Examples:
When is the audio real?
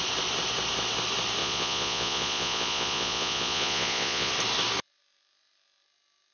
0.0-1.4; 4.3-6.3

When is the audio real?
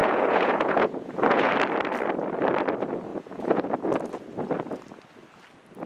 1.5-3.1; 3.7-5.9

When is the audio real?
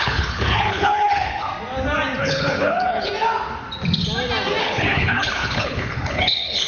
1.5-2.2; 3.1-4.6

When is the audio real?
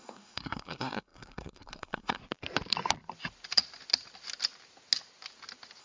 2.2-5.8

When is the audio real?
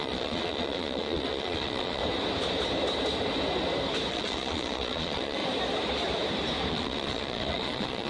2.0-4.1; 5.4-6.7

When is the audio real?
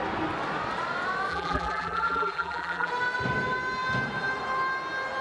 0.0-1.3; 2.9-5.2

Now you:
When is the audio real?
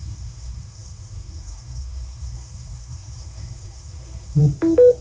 4.4-5.0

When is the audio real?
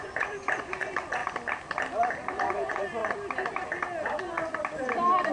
1.2-2.5; 3.0-5.3